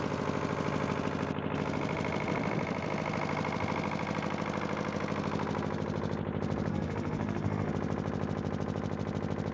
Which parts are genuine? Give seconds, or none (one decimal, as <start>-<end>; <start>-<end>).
0.0-6.7; 7.7-9.5